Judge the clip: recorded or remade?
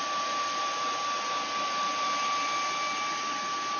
recorded